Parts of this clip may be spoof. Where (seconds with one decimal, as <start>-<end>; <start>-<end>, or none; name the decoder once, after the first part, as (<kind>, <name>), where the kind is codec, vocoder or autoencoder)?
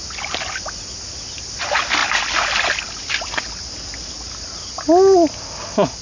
none